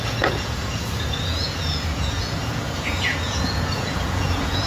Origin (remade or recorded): remade